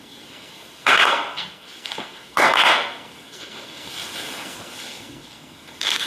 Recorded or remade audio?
remade